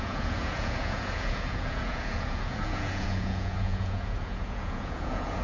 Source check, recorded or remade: remade